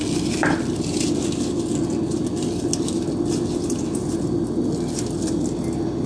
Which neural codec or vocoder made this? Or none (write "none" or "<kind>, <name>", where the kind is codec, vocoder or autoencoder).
none